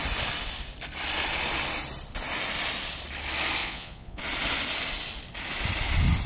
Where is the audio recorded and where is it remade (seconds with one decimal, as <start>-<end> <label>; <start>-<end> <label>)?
0.0-3.6 recorded; 3.6-4.2 remade; 4.2-6.3 recorded